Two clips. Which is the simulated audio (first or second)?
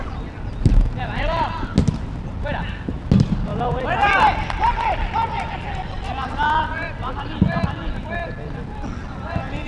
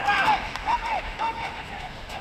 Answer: second